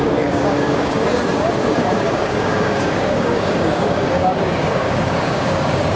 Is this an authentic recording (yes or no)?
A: no